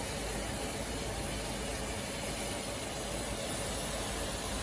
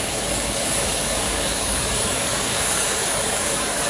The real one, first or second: first